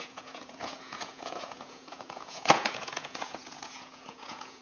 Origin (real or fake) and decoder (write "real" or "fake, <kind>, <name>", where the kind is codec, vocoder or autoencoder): fake, vocoder, Vocos